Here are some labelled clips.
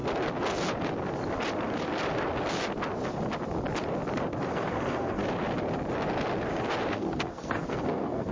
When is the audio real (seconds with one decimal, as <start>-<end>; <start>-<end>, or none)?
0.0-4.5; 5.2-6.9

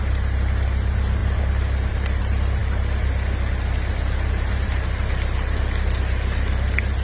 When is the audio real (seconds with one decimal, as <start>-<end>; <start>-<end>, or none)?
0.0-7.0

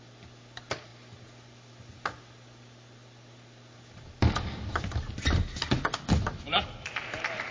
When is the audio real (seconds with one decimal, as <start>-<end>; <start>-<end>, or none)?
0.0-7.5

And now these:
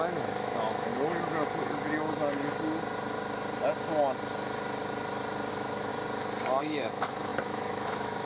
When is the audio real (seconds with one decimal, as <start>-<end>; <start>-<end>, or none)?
0.9-5.5; 5.9-6.6